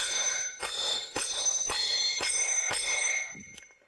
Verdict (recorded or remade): remade